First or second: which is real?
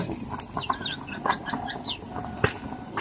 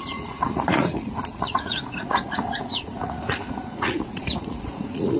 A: first